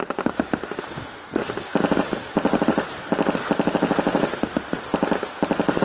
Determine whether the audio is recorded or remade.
recorded